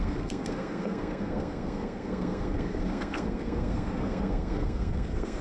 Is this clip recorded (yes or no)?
no